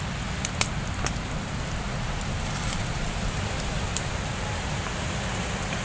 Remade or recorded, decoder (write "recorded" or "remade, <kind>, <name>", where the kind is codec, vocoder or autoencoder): recorded